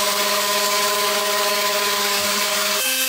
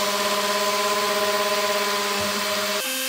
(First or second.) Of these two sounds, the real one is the second